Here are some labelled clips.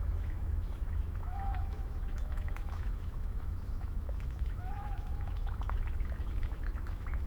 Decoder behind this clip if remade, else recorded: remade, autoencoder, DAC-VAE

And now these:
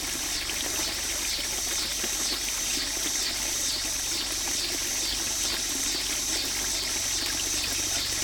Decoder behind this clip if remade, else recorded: recorded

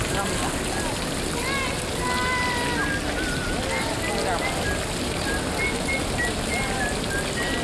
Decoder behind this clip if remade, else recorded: recorded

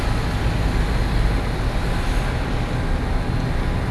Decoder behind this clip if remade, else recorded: recorded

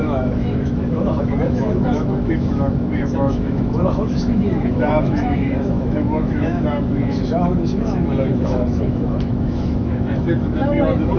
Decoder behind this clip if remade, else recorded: remade, autoencoder, DAC-VAE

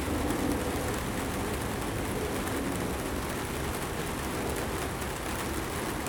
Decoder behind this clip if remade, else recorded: recorded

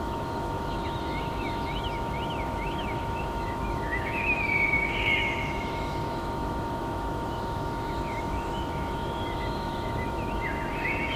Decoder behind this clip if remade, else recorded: remade, autoencoder, DAC-VAE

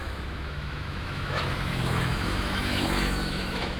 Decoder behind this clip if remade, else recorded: remade, autoencoder, DAC-VAE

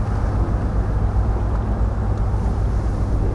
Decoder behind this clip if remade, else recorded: recorded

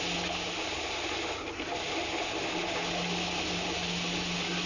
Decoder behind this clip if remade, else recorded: recorded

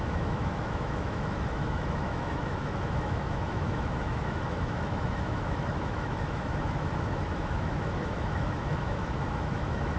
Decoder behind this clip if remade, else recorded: remade, autoencoder, DAC-VAE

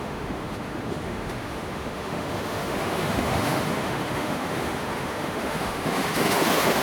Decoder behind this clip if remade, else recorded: remade, autoencoder, DAC-VAE